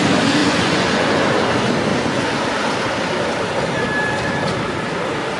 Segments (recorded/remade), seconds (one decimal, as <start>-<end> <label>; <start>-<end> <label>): 0.0-0.4 recorded; 0.4-1.2 remade; 1.2-1.9 recorded; 1.9-2.5 remade; 2.5-5.4 recorded